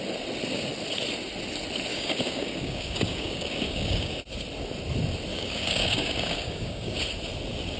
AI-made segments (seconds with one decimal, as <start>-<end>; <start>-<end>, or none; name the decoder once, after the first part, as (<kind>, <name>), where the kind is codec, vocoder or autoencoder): 1.9-4.2 (codec, DAC); 5.3-7.0

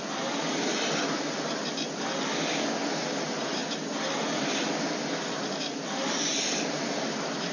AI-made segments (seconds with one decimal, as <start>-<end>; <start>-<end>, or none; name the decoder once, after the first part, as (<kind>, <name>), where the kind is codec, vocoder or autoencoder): none

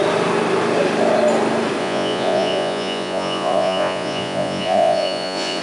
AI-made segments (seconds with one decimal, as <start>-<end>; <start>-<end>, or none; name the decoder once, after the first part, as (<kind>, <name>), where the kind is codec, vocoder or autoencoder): 1.8-5.6 (vocoder, Vocos)

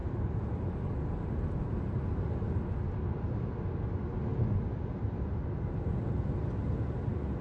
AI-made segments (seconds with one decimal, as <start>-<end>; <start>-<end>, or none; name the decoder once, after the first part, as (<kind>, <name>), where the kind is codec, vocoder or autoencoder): 0.0-0.5 (vocoder, BigVGAN v2)

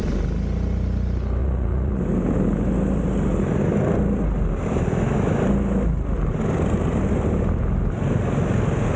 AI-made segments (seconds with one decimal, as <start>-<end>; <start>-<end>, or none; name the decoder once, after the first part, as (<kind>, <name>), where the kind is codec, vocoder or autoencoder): 1.4-2.0 (vocoder, Vocos)

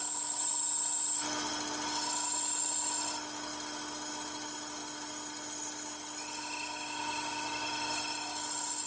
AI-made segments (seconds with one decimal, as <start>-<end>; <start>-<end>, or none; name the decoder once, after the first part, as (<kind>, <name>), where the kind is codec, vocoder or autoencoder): none